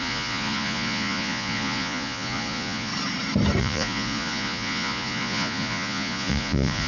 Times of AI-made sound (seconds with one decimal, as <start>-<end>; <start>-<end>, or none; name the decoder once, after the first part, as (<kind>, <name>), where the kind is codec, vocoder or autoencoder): 0.0-2.9 (vocoder, Vocos); 3.6-6.9